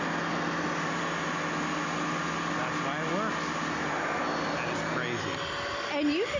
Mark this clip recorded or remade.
recorded